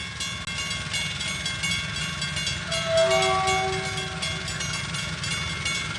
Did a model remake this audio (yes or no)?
no